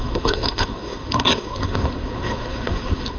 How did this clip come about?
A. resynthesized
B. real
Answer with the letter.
A